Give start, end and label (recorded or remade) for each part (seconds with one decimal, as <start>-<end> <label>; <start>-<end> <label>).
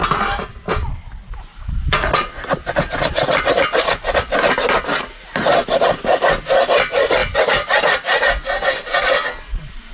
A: 0.0-9.9 recorded